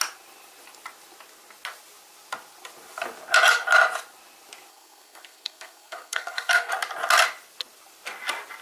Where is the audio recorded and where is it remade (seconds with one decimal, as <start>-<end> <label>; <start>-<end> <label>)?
0.0-4.7 recorded; 4.7-6.7 remade; 6.7-8.6 recorded